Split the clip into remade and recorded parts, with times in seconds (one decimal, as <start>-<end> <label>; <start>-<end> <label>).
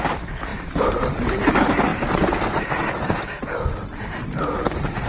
0.0-1.9 remade; 1.9-4.2 recorded; 4.2-5.1 remade